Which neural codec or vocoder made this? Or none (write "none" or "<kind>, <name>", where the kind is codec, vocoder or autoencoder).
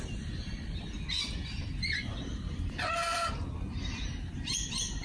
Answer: none